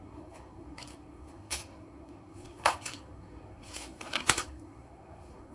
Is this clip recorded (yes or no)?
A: no